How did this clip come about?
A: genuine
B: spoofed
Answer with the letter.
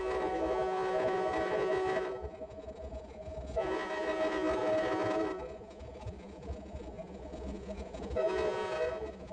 B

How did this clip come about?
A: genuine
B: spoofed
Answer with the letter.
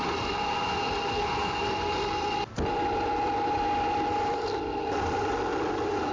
A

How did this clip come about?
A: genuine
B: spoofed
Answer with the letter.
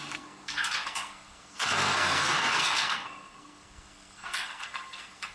B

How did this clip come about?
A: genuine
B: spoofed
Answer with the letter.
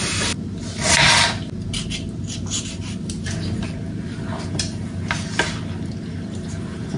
A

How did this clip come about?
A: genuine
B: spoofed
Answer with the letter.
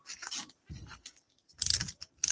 A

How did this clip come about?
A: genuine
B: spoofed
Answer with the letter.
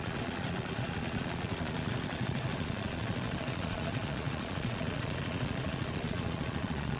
B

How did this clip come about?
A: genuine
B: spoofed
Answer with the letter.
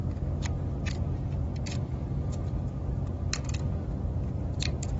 A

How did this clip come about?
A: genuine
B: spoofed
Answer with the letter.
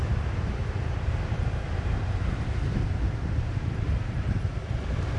B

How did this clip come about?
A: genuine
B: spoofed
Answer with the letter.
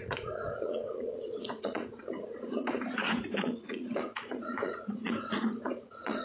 B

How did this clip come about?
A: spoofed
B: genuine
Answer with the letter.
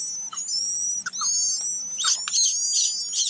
B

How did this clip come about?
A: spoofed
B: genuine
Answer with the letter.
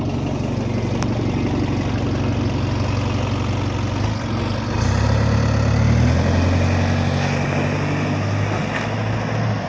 B